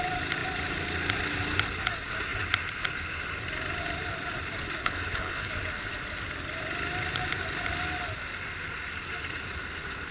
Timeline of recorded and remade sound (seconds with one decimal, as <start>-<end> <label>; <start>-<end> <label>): 0.0-4.8 recorded; 4.8-5.5 remade; 5.5-10.1 recorded